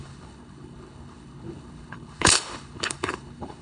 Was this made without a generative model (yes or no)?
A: no